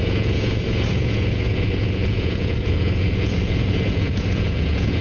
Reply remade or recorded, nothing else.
remade